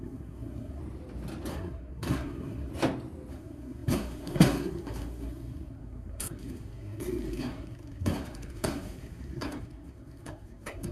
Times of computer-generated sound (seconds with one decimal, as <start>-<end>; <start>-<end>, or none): 0.0-0.8; 1.5-2.7; 3.3-10.9